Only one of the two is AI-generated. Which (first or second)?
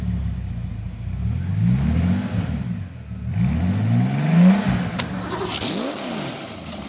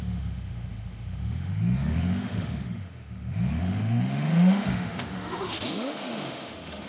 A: second